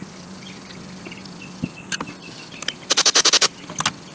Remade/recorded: recorded